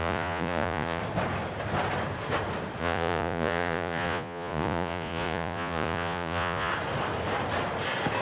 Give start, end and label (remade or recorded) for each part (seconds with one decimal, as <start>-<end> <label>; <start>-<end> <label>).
0.0-1.0 remade; 1.0-2.8 recorded; 2.8-6.7 remade; 6.7-8.2 recorded